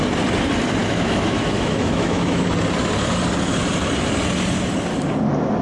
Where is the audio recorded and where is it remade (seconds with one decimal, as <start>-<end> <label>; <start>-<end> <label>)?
0.0-0.8 recorded; 0.8-2.5 remade; 2.5-5.6 recorded